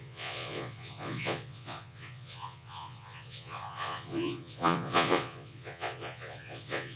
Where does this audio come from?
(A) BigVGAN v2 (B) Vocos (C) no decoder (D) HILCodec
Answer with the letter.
B